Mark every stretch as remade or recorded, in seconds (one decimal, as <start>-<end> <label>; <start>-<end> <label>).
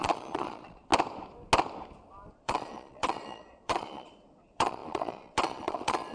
0.0-0.9 remade; 0.9-2.3 recorded; 2.3-6.1 remade